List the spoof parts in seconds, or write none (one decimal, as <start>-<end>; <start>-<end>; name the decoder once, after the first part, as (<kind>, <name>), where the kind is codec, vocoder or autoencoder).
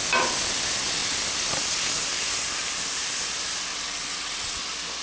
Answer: 3.7-4.6 (vocoder, WaveNeXt)